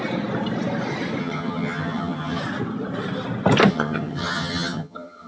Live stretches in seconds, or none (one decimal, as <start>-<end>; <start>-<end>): 0.0-1.2; 2.4-3.7